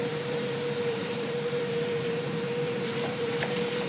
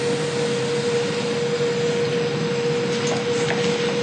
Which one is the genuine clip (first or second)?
second